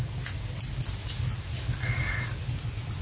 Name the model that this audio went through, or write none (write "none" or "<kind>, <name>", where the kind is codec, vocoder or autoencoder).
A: none